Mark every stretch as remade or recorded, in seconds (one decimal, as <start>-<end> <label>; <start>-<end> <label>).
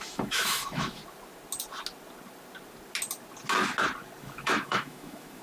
0.0-1.0 remade; 1.0-4.2 recorded; 4.2-5.4 remade